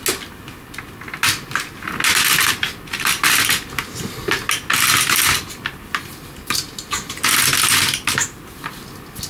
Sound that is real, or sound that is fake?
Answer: real